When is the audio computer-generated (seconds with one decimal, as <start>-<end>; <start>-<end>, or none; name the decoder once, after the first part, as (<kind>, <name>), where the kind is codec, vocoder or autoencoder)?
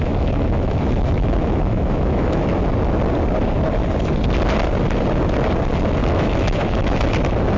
0.0-2.4 (autoencoder, DAC-VAE); 6.0-7.0